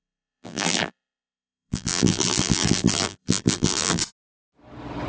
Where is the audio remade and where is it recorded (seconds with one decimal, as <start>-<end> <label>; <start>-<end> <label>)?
0.0-4.0 remade; 4.0-5.1 recorded